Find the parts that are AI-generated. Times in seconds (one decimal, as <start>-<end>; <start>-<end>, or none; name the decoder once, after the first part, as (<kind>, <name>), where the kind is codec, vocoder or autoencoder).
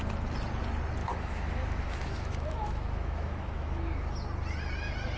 1.0-4.1 (autoencoder, DAC-VAE)